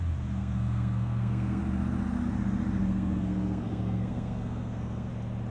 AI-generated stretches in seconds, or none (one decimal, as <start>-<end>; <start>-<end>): 0.4-1.6; 2.8-5.1

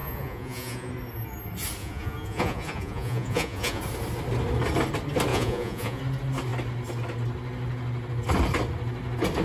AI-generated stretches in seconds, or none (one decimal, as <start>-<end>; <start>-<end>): 0.0-0.9; 1.8-3.8; 5.3-6.0